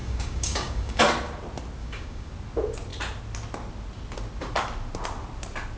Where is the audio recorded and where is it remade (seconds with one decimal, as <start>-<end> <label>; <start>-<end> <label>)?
0.0-1.0 remade; 1.0-1.8 recorded; 1.8-2.3 remade; 2.3-5.8 recorded